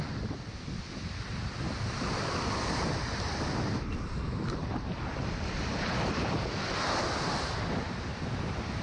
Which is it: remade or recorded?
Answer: recorded